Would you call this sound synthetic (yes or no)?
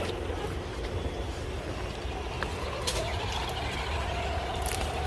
no